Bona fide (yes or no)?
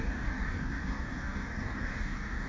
no